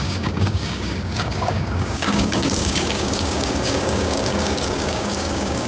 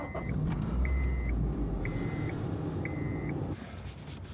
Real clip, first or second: second